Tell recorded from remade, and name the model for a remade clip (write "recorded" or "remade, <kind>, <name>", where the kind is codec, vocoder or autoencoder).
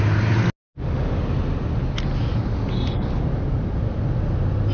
recorded